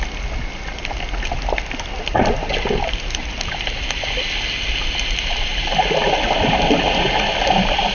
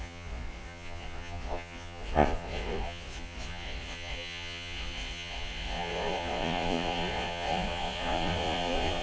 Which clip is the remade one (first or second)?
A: second